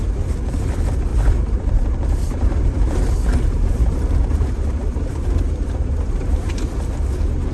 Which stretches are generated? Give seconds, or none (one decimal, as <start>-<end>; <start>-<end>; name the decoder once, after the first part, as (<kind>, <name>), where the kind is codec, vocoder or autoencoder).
1.1-4.0 (vocoder, BigVGAN v2); 4.8-6.5